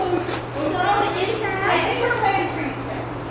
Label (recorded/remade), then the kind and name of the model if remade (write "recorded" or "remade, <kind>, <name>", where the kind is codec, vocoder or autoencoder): recorded